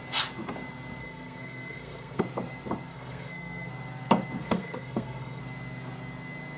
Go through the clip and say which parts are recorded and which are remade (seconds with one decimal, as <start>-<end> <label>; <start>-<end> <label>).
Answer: 0.0-1.0 recorded; 1.0-2.2 remade; 2.2-2.9 recorded; 2.9-3.7 remade; 3.7-4.4 recorded; 4.4-5.4 remade; 5.4-6.6 recorded